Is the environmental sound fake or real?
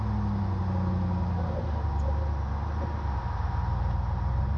real